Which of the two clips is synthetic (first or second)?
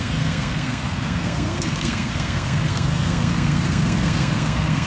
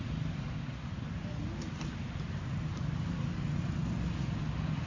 first